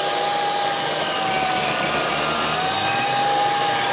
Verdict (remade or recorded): recorded